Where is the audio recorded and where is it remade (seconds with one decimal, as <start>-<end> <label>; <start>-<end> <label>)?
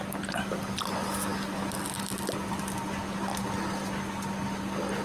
0.0-5.0 recorded